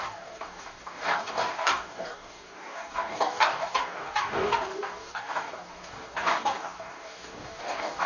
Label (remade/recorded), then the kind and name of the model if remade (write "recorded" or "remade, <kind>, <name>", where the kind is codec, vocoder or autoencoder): remade, codec, DAC